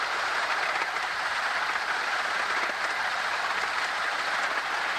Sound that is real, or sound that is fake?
real